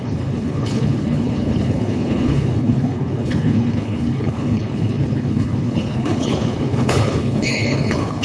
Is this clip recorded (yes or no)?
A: no